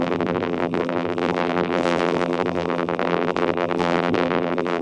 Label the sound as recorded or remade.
remade